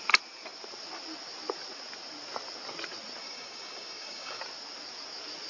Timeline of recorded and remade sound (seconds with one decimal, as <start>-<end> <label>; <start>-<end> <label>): 0.0-3.2 recorded; 3.2-4.4 remade; 4.4-5.5 recorded